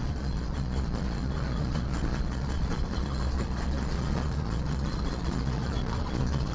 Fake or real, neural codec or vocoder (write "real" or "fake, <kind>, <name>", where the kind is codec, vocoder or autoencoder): fake, vocoder, Vocos